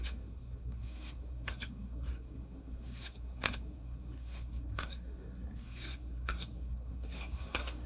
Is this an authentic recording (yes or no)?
no